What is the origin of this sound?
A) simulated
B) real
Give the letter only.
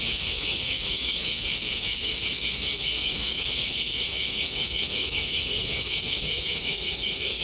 A